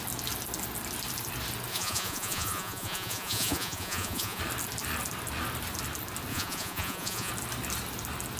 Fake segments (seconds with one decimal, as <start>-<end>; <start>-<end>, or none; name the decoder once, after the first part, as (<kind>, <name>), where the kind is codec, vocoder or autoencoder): 1.7-4.4 (vocoder, Vocos); 6.3-7.3